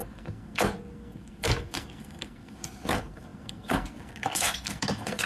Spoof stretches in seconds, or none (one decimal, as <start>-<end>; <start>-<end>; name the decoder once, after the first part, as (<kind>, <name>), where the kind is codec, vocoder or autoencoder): 0.0-5.3 (codec, SNAC)